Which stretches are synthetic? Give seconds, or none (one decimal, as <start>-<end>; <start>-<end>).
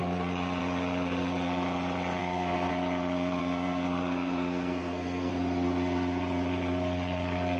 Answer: 2.2-2.7; 3.4-5.3